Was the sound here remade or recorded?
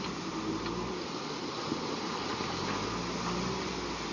recorded